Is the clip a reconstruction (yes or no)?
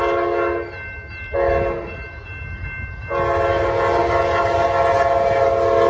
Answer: no